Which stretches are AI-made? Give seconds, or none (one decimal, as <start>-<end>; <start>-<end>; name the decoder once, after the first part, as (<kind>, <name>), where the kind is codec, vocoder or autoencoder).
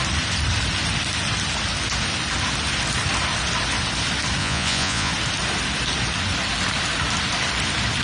4.4-5.1 (vocoder, Vocos)